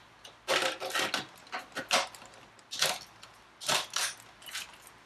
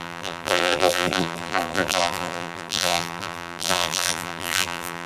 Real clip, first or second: first